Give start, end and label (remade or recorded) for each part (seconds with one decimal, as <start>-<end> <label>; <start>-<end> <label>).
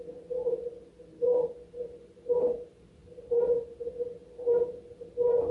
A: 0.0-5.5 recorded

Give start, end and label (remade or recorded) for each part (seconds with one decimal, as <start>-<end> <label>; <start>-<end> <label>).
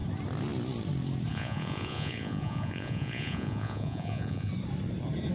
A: 0.0-1.3 recorded; 1.3-4.5 remade; 4.5-5.3 recorded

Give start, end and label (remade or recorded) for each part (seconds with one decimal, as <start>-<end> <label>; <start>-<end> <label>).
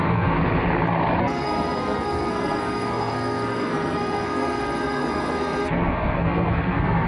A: 0.0-0.4 remade; 0.4-1.2 recorded; 1.2-7.1 remade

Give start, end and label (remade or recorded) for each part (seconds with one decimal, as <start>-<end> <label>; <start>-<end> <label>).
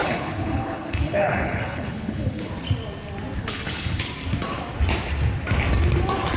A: 0.0-2.5 remade; 2.5-3.4 recorded; 3.4-4.0 remade; 4.0-6.4 recorded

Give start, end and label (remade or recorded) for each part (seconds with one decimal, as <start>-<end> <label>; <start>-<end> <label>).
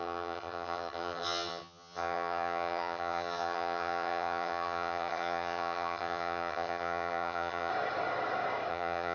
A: 0.0-7.7 remade; 7.7-8.7 recorded; 8.7-9.1 remade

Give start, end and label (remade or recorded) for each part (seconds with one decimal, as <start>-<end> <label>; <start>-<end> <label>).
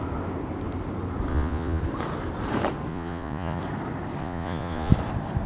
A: 0.0-1.3 recorded; 1.3-1.8 remade; 1.8-2.9 recorded; 2.9-3.6 remade; 3.6-4.2 recorded; 4.2-4.9 remade; 4.9-5.5 recorded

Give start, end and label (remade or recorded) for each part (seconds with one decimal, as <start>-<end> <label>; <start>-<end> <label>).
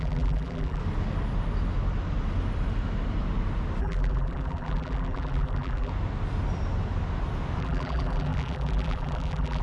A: 0.0-0.8 remade; 0.8-3.8 recorded; 3.8-5.9 remade; 5.9-7.6 recorded; 7.6-9.6 remade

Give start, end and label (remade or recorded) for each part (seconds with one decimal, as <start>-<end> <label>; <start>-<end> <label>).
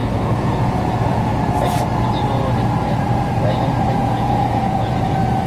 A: 0.0-1.3 remade; 1.3-4.0 recorded; 4.0-5.0 remade; 5.0-5.5 recorded